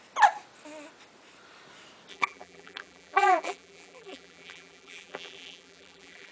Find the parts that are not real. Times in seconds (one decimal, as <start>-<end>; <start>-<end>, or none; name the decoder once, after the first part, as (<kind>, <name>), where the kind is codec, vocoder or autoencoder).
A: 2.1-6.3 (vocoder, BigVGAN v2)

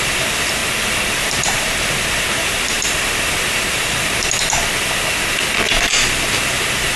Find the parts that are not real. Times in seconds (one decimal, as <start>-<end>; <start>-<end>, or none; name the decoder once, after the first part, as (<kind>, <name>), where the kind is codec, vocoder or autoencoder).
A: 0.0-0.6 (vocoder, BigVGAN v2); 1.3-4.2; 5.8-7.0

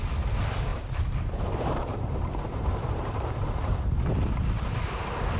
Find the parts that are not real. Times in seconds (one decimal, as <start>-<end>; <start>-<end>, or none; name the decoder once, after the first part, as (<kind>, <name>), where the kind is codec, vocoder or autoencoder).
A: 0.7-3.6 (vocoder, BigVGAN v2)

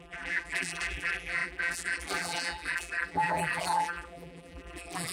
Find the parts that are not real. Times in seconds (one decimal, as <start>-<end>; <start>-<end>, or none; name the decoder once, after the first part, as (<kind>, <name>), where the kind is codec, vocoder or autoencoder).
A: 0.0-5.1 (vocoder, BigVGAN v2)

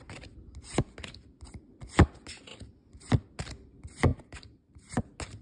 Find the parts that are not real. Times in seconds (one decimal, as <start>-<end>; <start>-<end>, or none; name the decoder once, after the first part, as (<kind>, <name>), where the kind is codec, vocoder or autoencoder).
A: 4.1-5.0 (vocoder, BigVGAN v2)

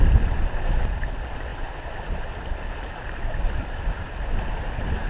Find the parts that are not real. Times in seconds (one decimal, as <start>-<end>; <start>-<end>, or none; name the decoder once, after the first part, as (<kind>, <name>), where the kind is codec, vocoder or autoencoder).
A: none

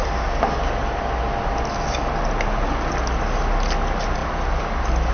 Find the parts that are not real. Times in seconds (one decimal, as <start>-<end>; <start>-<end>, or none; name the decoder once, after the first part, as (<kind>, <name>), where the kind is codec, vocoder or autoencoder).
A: none

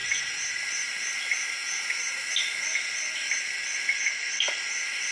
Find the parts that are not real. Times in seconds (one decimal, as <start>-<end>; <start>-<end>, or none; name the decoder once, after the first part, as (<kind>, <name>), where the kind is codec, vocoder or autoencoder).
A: 0.0-1.2 (vocoder, BigVGAN v2)